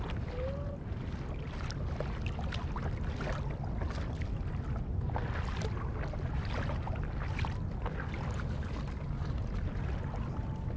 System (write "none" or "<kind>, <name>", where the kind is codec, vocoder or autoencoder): none